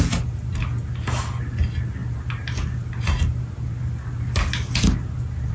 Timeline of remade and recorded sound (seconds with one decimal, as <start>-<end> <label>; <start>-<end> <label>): 0.0-5.5 recorded